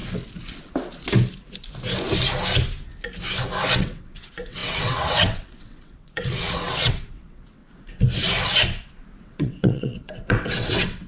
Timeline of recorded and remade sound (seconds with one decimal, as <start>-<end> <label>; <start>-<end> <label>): 0.0-3.8 recorded; 3.8-7.6 remade; 7.6-9.2 recorded; 9.2-11.1 remade